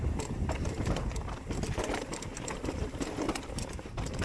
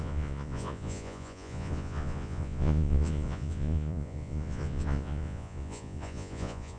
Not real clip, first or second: second